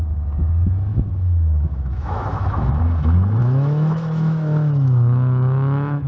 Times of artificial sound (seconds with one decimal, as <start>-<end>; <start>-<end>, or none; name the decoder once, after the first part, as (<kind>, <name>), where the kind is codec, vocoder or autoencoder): 0.9-2.8 (autoencoder, DAC-VAE); 3.4-6.1